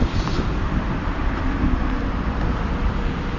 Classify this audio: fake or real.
real